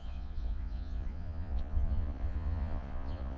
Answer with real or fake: fake